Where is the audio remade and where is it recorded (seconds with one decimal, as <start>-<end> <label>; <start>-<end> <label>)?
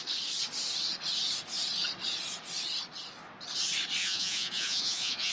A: 0.0-4.0 recorded; 4.0-5.3 remade